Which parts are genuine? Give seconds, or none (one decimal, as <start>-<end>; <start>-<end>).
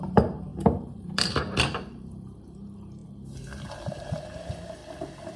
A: 3.0-3.9; 4.8-5.4